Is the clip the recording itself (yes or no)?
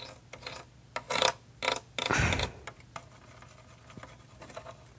yes